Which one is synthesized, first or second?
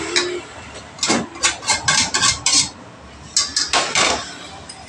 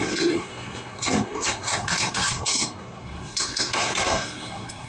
second